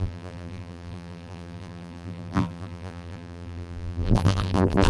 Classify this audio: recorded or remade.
remade